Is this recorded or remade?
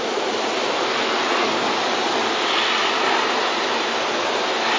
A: recorded